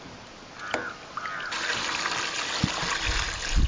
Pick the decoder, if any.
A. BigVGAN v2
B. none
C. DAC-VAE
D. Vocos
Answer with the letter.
B